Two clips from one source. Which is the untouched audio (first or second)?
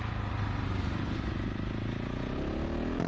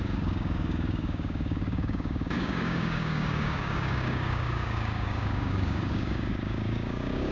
first